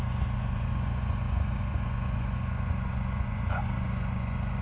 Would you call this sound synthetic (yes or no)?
yes